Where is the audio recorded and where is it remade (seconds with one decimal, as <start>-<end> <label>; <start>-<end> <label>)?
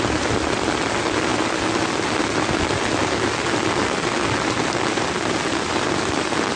0.0-6.6 recorded